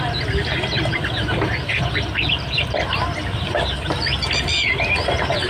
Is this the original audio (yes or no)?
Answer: no